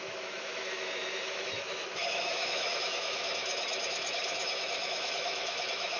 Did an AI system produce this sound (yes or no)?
yes